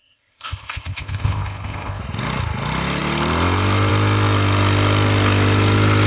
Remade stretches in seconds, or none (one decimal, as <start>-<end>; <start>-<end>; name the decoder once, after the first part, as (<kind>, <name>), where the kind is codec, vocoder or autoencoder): 0.0-2.0 (codec, ZipCodec)